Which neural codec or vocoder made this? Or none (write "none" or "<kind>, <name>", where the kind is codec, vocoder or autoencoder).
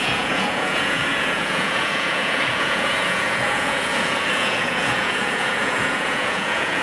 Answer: vocoder, Vocos